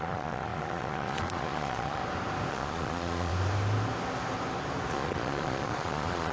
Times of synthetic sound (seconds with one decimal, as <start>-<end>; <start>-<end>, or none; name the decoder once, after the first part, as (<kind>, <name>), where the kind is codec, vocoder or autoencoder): 0.0-2.0 (vocoder, Vocos); 2.5-3.3; 4.9-6.3